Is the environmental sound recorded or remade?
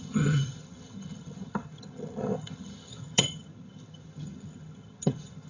remade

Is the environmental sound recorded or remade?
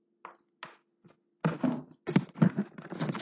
recorded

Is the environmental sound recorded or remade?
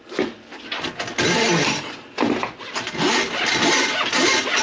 recorded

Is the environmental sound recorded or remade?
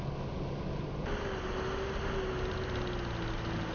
recorded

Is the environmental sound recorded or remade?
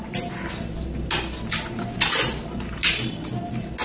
recorded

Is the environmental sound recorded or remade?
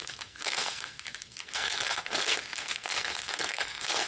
remade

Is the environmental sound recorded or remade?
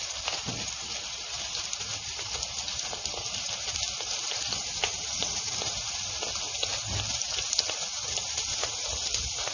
recorded